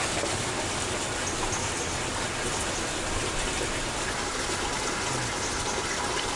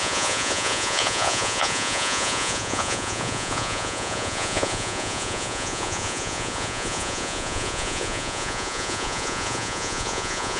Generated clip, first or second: second